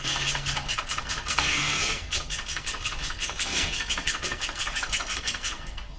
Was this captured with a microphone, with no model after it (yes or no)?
no